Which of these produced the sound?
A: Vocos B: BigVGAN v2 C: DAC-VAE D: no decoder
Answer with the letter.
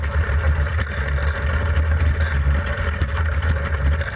D